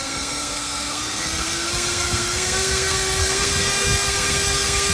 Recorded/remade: remade